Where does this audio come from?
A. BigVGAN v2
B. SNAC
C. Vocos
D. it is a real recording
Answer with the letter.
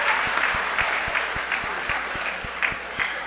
A